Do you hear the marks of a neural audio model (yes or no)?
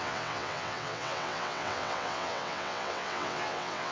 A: yes